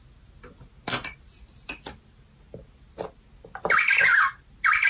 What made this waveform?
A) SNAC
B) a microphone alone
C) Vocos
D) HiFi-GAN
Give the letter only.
B